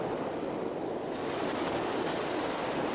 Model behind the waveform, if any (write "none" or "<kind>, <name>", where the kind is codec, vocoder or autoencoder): none